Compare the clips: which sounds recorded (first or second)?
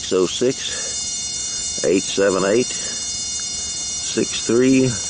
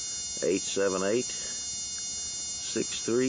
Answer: second